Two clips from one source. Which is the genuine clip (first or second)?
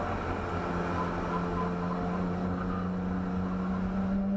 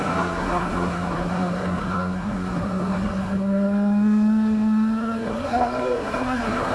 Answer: first